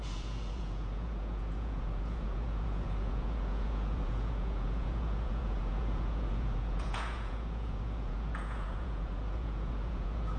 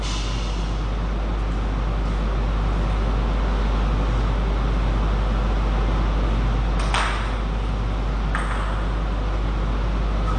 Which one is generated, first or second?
first